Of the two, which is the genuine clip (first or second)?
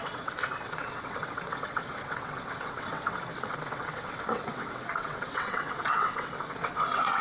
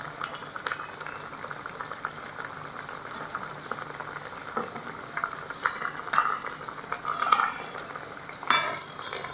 second